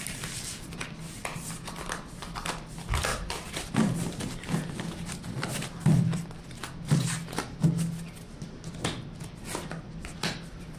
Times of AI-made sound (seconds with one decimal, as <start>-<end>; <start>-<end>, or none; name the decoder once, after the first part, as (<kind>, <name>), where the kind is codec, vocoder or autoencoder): 1.3-2.2 (vocoder, BigVGAN v2); 3.1-6.3